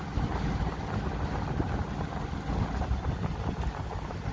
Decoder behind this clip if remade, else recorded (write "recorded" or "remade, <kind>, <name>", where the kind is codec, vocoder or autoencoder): recorded